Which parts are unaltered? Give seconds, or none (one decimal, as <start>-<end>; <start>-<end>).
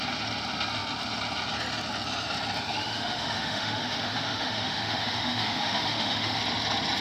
0.0-2.7; 6.4-7.0